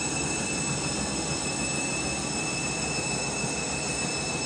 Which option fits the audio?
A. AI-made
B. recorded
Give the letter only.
B